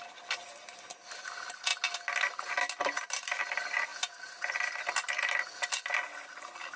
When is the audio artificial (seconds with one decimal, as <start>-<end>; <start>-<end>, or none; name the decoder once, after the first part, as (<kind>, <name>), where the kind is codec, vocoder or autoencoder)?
none